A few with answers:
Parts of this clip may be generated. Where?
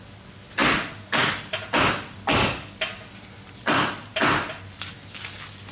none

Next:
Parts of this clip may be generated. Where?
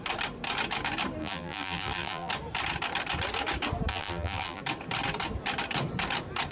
1.2-2.3 (vocoder, BigVGAN v2); 3.9-4.6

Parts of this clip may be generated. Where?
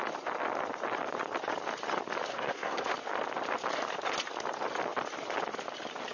2.3-2.9 (codec, SNAC)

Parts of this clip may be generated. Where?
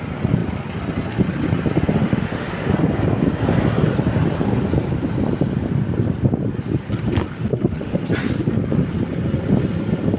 2.0-2.5 (autoencoder, DAC-VAE); 7.5-8.0